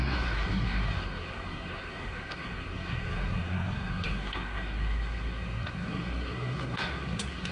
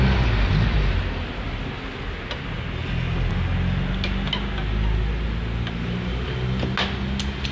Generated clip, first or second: first